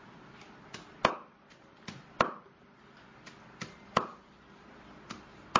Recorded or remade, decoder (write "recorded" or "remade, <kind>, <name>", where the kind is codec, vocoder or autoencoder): recorded